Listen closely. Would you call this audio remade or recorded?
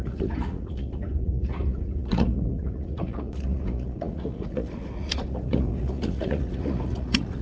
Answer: remade